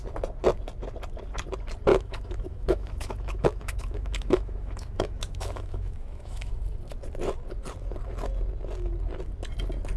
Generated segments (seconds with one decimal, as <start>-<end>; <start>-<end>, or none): 1.9-6.5